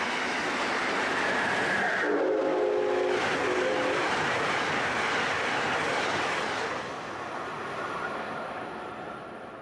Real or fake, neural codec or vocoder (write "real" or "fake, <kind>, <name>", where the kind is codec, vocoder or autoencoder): real